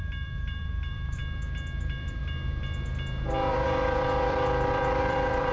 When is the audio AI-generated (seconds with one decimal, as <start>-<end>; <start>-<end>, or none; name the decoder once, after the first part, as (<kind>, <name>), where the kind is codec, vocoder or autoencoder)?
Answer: 0.0-1.2 (vocoder, BigVGAN v2); 1.8-2.2; 3.5-5.5